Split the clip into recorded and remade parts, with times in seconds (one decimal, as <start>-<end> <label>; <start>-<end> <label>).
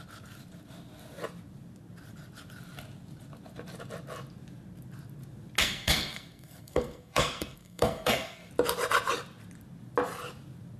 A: 0.0-5.6 recorded; 5.6-8.5 remade; 8.5-10.8 recorded